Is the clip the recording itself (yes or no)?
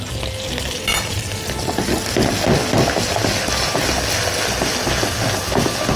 yes